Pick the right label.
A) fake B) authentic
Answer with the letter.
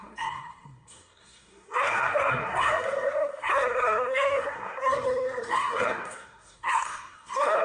A